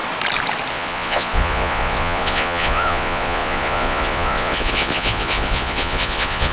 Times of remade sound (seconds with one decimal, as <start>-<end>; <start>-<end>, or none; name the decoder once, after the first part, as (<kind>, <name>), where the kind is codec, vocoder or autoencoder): 0.7-6.5 (vocoder, Vocos)